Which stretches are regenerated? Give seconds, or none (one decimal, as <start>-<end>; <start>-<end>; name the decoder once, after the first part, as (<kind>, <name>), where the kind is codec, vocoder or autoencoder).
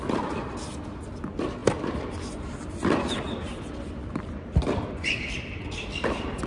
none